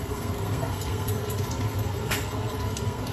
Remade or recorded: remade